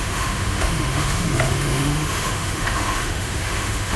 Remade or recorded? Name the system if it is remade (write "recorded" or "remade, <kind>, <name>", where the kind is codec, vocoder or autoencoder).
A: remade, autoencoder, DAC-VAE